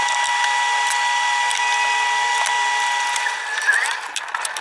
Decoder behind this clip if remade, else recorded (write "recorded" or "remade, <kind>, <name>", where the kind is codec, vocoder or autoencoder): recorded